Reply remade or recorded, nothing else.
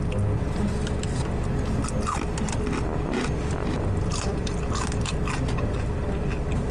remade